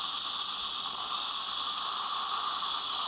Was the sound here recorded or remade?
recorded